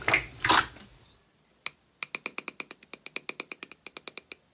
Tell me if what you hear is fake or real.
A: real